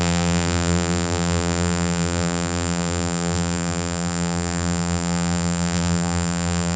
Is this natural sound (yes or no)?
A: no